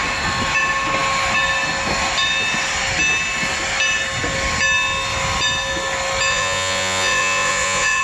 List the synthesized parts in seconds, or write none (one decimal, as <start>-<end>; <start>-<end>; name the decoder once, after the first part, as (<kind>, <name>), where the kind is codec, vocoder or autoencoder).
6.3-8.0 (vocoder, Vocos)